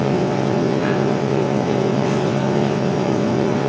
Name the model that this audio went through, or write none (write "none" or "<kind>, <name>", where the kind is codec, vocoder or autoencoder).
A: vocoder, WaveNeXt